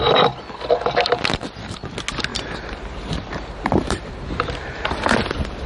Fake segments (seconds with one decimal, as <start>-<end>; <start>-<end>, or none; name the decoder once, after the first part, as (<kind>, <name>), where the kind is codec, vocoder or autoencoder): 2.3-4.0 (vocoder, BigVGAN v2)